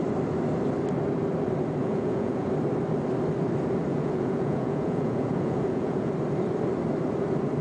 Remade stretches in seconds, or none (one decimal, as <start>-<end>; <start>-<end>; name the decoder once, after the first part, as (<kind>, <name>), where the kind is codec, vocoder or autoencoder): 1.8-2.5 (vocoder, Vocos); 3.9-6.1